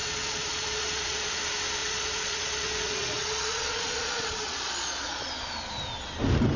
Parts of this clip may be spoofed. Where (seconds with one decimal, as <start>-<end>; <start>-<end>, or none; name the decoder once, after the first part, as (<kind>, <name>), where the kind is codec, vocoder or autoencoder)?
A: 0.0-1.4 (vocoder, Vocos); 1.8-5.3